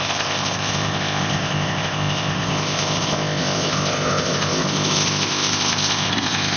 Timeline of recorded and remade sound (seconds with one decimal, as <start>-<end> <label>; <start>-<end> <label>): 0.0-6.6 remade